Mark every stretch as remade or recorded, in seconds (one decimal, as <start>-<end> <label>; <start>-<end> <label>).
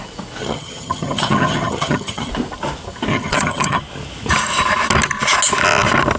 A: 0.0-0.4 recorded; 0.4-2.3 remade; 2.3-3.1 recorded; 3.1-3.8 remade; 3.8-6.2 recorded